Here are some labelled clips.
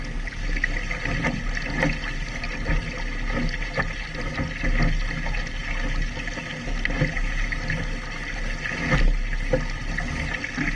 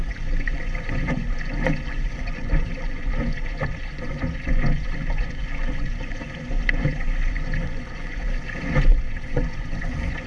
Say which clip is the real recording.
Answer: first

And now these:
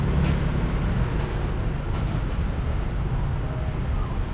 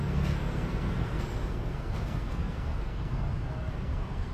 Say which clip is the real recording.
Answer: first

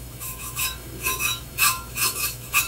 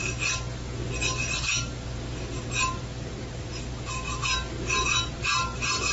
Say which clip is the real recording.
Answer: second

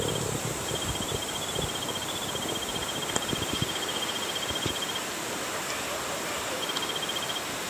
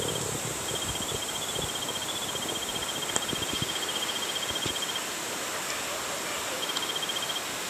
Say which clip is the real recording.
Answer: second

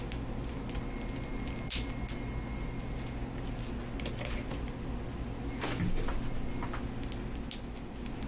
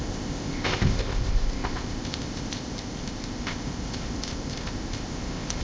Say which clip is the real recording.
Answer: first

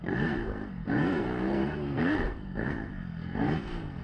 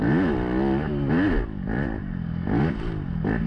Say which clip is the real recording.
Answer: second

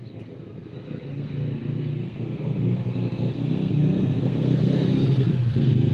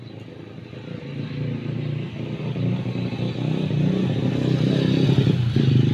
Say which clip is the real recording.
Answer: second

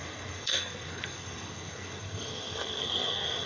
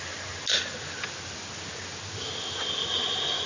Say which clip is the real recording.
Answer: second